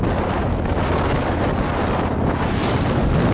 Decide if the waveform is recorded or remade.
recorded